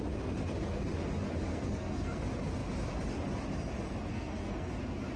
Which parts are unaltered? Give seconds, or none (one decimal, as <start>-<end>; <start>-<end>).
0.0-1.5; 2.2-4.1; 4.7-5.2